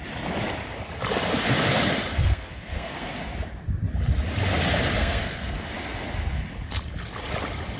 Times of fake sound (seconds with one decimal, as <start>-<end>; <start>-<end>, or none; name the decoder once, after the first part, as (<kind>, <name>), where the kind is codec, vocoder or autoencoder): 2.1-3.2 (codec, SNAC); 5.0-5.6